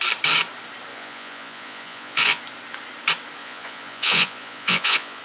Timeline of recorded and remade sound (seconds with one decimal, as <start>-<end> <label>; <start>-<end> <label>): 0.0-0.9 recorded; 0.9-2.4 remade; 2.4-3.4 recorded; 3.4-5.2 remade